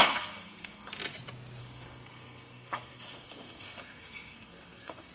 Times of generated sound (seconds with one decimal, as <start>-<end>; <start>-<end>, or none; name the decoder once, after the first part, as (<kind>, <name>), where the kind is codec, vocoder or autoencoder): 0.0-0.9 (codec, SNAC); 1.6-5.1